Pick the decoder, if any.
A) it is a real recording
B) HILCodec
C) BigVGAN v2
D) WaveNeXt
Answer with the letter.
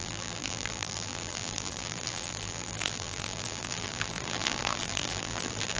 C